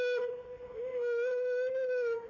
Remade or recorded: remade